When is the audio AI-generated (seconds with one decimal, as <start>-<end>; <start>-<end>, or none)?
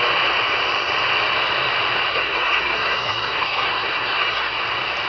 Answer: 2.1-4.6